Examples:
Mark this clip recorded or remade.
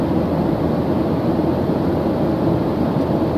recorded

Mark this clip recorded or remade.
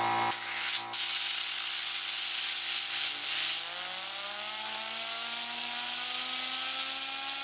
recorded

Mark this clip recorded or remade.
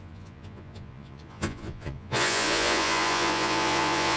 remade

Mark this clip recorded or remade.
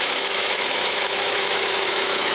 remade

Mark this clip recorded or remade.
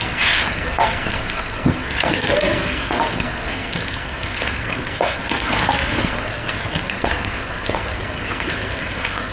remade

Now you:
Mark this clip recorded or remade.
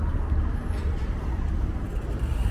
recorded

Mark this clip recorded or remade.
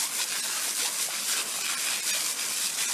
recorded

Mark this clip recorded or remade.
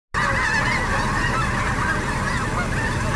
recorded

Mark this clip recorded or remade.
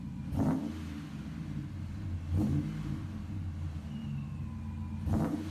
recorded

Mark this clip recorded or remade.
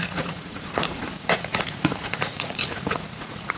remade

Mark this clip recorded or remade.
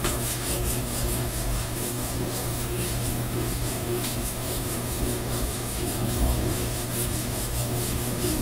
remade